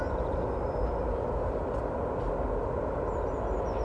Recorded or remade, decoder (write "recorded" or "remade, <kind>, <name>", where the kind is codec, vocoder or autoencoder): recorded